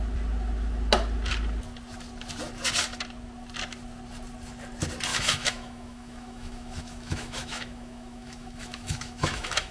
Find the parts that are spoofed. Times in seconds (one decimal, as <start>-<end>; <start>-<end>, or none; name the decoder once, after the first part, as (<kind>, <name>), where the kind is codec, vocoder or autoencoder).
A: 5.1-9.7 (autoencoder, DAC-VAE)